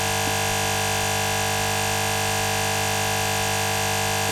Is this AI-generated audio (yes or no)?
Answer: no